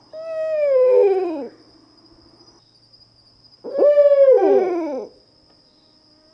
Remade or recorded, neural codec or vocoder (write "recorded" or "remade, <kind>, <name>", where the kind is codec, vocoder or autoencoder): recorded